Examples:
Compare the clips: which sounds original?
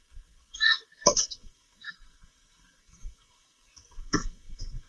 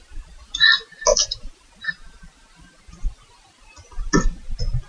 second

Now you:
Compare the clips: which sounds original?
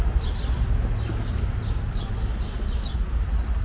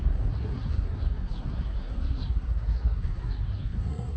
first